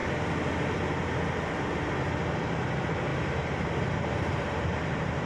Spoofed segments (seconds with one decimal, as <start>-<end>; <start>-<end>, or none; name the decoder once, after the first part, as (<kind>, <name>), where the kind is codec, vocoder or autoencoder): 3.1-5.3 (vocoder, BigVGAN v2)